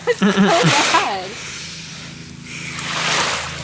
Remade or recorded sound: recorded